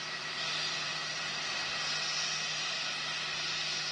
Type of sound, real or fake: real